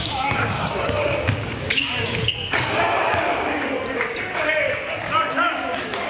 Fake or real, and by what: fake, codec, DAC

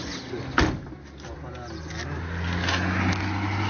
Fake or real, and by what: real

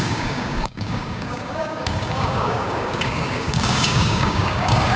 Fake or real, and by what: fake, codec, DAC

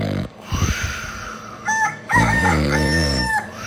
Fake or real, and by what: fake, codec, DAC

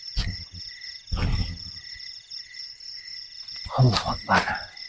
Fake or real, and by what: real